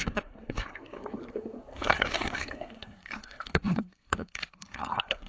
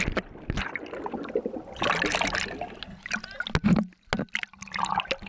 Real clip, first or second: second